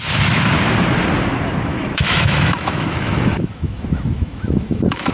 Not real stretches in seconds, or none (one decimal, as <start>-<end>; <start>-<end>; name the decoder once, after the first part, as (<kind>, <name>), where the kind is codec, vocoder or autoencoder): 1.7-5.1 (autoencoder, DAC-VAE)